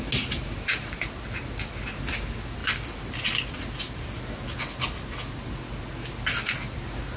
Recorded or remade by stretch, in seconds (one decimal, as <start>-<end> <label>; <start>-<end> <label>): 0.0-7.2 recorded